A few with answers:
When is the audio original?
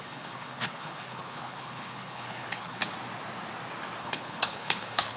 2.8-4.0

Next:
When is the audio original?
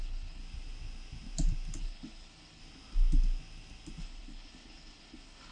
0.4-1.8; 2.6-4.0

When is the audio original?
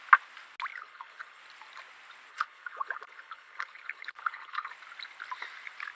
0.0-0.7; 1.4-2.3; 4.7-5.9